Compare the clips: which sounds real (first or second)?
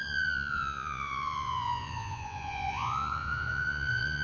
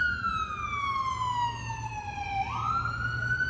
second